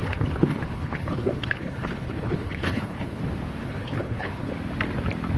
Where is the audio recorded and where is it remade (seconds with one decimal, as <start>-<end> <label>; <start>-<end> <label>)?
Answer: 0.0-3.2 remade; 3.2-3.6 recorded; 3.6-4.5 remade; 4.5-5.4 recorded